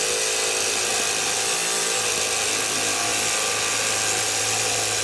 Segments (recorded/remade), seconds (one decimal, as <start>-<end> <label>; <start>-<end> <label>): 0.0-5.0 recorded